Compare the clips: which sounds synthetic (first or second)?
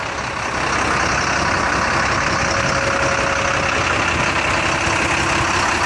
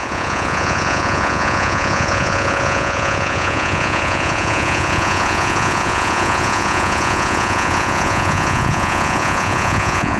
second